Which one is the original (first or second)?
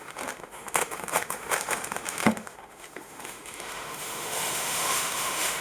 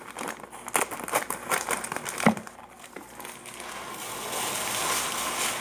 second